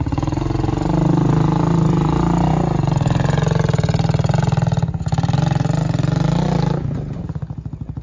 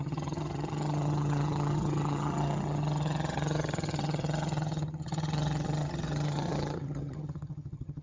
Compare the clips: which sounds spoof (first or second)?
second